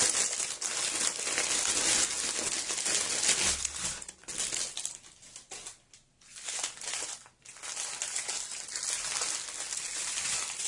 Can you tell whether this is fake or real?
real